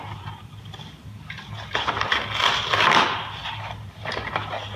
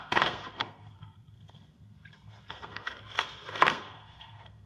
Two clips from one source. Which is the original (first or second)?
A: first